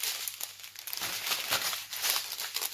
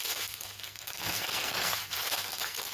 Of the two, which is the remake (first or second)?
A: second